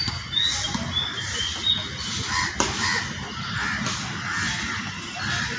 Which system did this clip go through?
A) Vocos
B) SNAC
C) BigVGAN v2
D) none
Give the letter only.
D